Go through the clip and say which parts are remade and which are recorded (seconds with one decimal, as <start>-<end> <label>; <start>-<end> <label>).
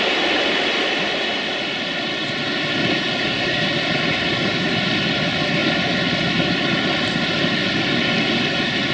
0.0-2.2 recorded; 2.2-3.5 remade; 3.5-8.9 recorded